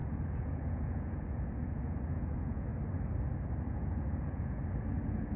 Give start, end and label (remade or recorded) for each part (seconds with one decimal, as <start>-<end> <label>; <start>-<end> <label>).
0.0-2.7 remade; 2.7-3.7 recorded; 3.7-5.4 remade